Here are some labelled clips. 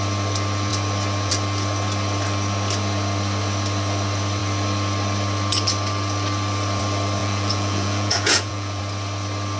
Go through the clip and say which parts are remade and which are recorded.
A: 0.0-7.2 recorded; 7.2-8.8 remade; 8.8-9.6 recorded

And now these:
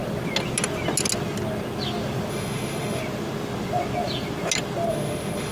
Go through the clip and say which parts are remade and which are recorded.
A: 0.0-2.3 recorded; 2.3-3.0 remade; 3.0-4.9 recorded; 4.9-5.5 remade